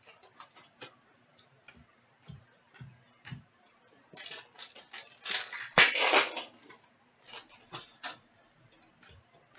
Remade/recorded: remade